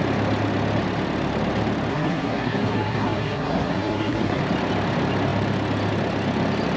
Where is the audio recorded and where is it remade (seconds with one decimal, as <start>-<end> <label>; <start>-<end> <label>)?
0.0-1.9 recorded; 1.9-4.4 remade; 4.4-6.8 recorded